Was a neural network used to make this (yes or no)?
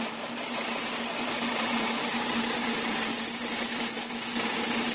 yes